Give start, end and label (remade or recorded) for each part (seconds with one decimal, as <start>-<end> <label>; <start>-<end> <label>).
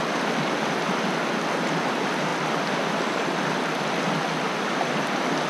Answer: 0.0-5.5 recorded